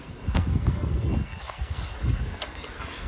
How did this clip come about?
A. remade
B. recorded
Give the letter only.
A